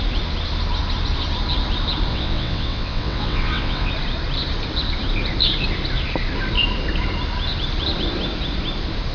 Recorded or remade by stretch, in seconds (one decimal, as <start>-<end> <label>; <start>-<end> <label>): 0.0-2.1 recorded; 2.1-3.9 remade; 3.9-9.1 recorded